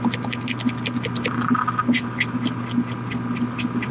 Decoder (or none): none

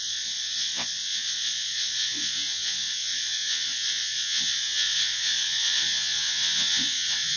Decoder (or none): vocoder, Vocos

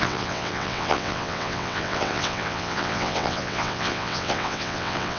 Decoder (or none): vocoder, WaveNeXt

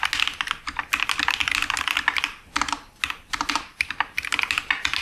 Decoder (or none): none